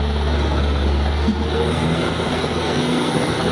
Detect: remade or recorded remade